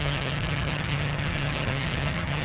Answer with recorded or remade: remade